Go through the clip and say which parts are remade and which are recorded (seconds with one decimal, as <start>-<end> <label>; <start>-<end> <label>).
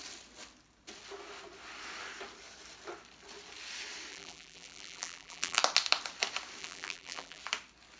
0.0-4.1 recorded; 4.1-5.6 remade; 5.6-6.6 recorded; 6.6-7.4 remade; 7.4-8.0 recorded